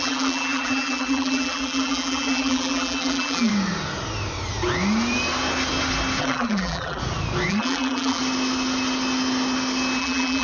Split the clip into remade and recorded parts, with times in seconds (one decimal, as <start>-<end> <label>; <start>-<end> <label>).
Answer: 0.0-3.5 remade; 3.5-6.2 recorded; 6.2-7.0 remade; 7.0-7.5 recorded; 7.5-8.2 remade; 8.2-10.0 recorded; 10.0-10.4 remade